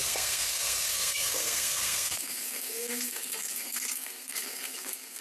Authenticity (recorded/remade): remade